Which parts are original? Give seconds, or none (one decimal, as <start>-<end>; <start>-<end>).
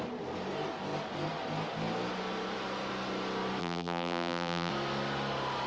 0.0-3.6; 4.7-5.7